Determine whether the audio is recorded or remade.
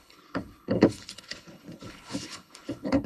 remade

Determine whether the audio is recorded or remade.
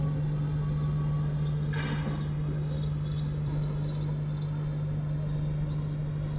recorded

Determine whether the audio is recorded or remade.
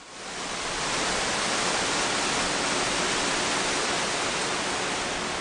recorded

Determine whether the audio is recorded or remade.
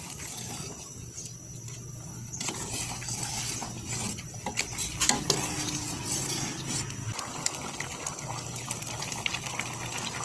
recorded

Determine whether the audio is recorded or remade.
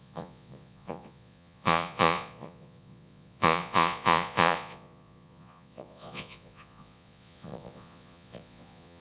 remade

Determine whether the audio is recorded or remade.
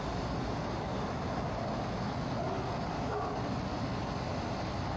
recorded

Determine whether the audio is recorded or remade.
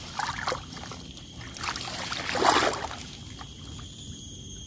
recorded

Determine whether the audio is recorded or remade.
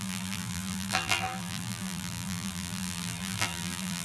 remade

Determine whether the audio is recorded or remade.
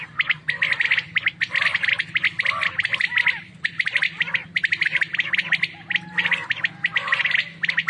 recorded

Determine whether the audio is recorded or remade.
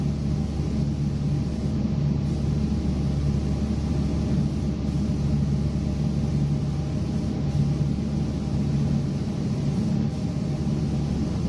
recorded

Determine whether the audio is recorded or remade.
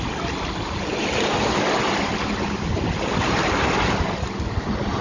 recorded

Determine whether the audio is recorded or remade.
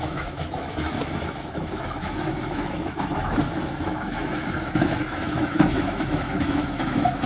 remade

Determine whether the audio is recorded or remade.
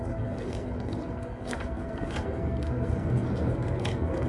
remade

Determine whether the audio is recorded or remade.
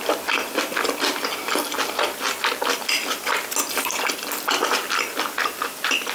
recorded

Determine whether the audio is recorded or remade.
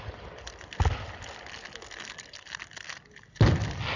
recorded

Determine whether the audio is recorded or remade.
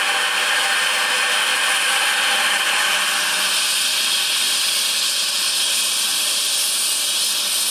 recorded